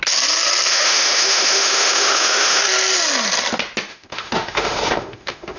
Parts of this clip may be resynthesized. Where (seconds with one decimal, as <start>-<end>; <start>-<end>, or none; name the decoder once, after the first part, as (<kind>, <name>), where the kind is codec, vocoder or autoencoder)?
0.7-2.6 (autoencoder, DAC-VAE); 3.9-5.6